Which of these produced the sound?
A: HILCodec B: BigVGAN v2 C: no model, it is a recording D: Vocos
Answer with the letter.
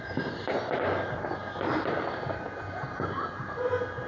B